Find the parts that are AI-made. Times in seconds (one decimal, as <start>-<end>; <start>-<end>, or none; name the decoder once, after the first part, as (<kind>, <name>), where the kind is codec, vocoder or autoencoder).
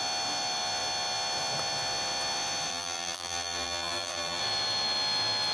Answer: 2.7-4.4 (vocoder, BigVGAN v2)